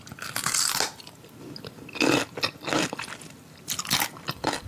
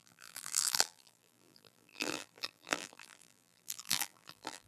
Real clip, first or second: first